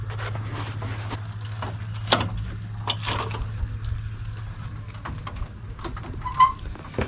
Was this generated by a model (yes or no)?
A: no